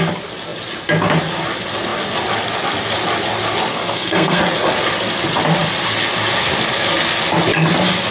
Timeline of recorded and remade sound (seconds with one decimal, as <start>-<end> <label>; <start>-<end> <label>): 0.0-3.7 recorded; 3.7-4.4 remade; 4.4-8.1 recorded